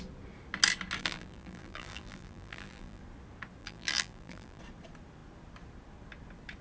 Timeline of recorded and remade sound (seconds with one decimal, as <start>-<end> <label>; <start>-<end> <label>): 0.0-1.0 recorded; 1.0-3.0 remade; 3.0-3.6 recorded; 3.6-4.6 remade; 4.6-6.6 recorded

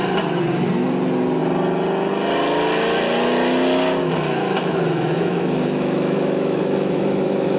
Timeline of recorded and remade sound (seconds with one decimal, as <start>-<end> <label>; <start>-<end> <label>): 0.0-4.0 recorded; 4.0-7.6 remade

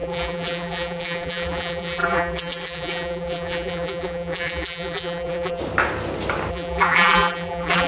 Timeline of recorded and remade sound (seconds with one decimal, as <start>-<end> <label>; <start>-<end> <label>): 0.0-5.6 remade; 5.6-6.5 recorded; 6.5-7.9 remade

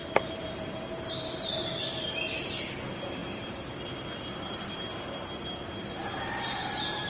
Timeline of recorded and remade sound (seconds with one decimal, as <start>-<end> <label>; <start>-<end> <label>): 0.0-7.1 recorded